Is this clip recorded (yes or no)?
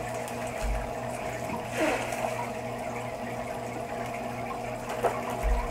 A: yes